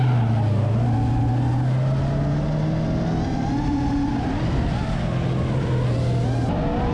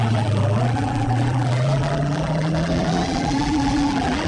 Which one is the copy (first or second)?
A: second